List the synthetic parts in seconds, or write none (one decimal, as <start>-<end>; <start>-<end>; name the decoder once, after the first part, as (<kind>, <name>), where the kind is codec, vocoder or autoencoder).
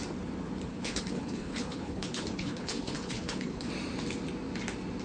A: 0.7-3.7 (codec, HILCodec)